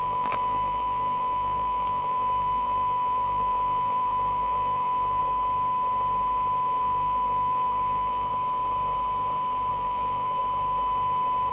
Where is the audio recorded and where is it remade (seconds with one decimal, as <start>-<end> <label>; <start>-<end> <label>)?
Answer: 0.0-5.2 remade; 5.2-6.8 recorded; 6.8-8.3 remade; 8.3-9.7 recorded; 9.7-10.4 remade; 10.4-11.5 recorded